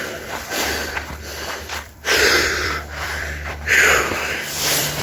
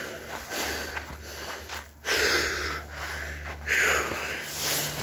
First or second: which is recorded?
second